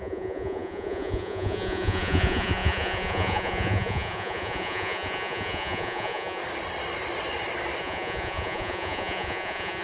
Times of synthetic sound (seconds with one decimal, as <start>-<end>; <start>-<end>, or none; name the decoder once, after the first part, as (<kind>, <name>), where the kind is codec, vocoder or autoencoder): 0.0-6.4 (vocoder, Vocos); 7.8-9.8